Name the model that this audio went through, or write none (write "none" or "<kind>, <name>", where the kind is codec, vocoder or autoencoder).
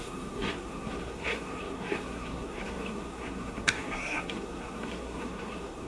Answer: codec, SNAC